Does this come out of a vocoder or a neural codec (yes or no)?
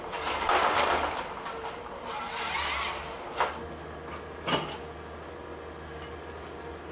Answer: no